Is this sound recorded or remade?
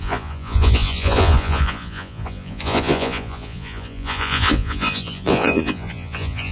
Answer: remade